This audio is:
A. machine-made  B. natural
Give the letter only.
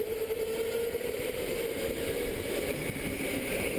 B